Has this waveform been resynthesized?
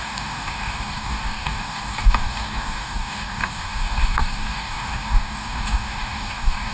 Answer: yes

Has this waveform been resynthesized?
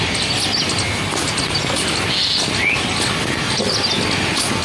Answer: no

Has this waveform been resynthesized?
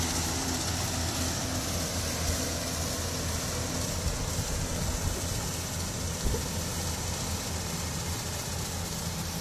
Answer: no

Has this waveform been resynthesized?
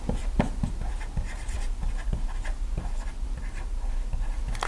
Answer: no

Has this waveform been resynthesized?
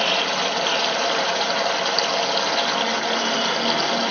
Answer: no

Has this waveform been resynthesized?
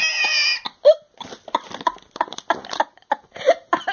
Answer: no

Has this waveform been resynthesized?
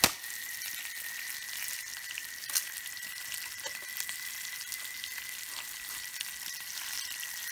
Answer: no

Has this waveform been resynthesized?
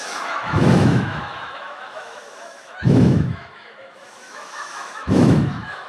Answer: yes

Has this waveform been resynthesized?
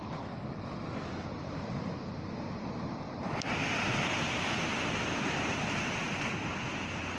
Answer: no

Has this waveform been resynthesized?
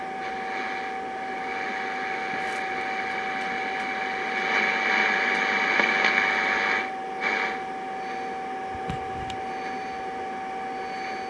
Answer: no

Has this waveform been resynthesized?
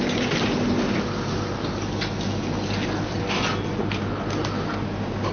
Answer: no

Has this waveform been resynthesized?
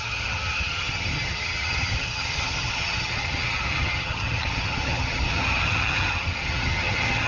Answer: yes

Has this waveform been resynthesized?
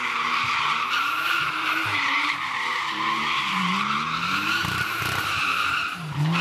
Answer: yes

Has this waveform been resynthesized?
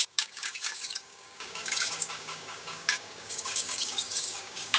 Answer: yes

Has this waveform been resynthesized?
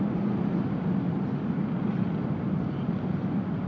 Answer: no